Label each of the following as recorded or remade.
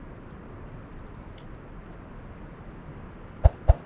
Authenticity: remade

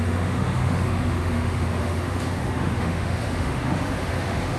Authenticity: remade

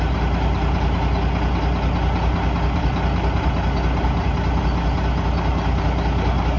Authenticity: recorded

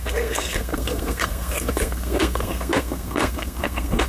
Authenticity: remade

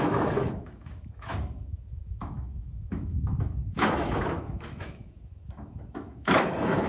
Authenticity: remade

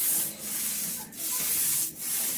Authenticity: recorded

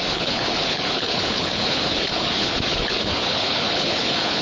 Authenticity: remade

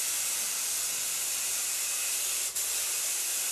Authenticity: recorded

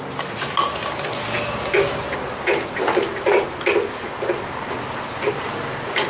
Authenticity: recorded